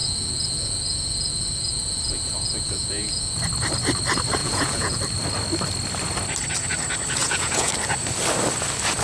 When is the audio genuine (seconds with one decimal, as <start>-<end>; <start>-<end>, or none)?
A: 3.4-4.4; 5.0-7.2; 7.7-9.0